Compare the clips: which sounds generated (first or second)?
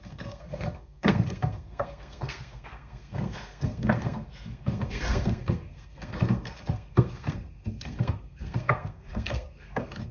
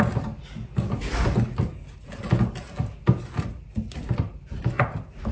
first